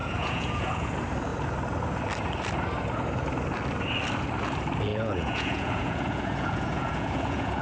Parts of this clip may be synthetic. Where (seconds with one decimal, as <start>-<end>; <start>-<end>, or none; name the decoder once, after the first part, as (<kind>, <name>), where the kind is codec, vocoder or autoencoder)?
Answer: 0.0-0.9 (vocoder, Vocos); 4.9-7.6